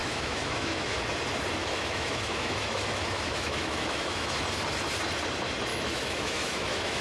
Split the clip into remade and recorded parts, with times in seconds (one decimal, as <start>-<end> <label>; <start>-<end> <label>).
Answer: 0.0-1.0 remade; 1.0-1.6 recorded; 1.6-4.4 remade; 4.4-5.7 recorded; 5.7-7.0 remade